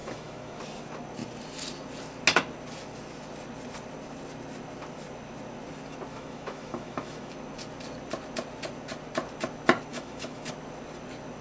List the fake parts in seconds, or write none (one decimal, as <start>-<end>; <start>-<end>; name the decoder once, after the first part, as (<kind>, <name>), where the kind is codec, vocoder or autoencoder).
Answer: 0.0-0.6 (autoencoder, DAC-VAE); 6.1-7.3; 9.9-10.5